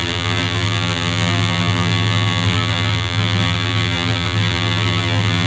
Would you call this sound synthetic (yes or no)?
yes